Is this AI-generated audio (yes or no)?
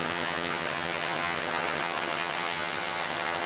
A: yes